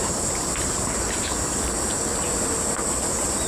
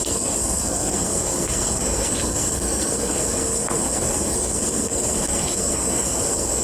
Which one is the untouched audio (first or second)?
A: first